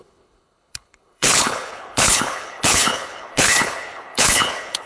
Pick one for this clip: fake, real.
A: fake